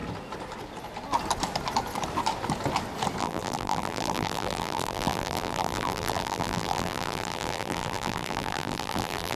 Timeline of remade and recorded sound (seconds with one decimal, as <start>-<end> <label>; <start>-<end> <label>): 0.0-3.2 recorded; 3.2-9.4 remade